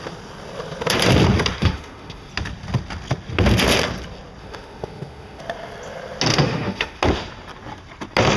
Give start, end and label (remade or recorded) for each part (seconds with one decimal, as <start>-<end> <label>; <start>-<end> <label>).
0.0-1.6 recorded; 1.6-2.3 remade; 2.3-4.4 recorded; 4.4-5.4 remade; 5.4-6.3 recorded; 6.3-7.0 remade; 7.0-8.4 recorded